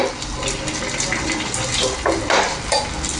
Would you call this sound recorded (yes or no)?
yes